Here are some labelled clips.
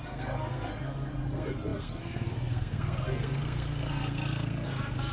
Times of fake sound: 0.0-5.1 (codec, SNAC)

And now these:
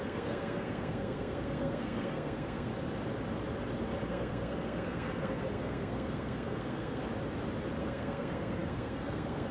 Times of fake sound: 0.0-2.7 (codec, SNAC); 4.1-7.0; 7.8-9.5